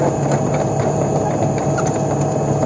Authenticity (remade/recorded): recorded